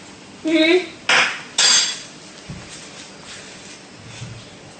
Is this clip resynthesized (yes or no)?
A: no